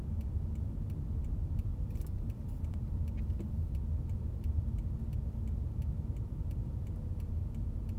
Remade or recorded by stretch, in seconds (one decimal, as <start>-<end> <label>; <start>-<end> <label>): 0.0-1.7 recorded; 1.7-3.1 remade; 3.1-6.6 recorded; 6.6-7.1 remade; 7.1-8.0 recorded